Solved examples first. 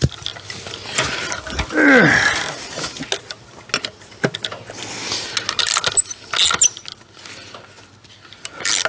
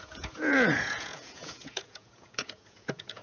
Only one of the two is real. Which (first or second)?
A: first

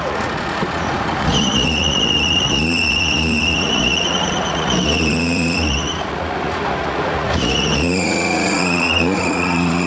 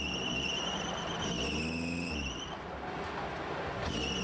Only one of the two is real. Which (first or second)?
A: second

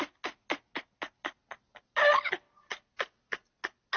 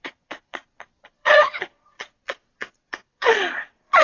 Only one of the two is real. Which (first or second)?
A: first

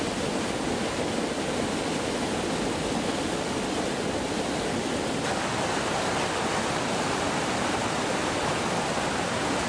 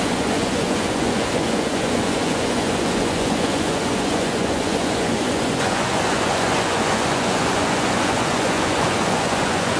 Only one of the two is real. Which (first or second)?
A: first